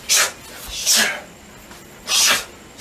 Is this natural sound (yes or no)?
yes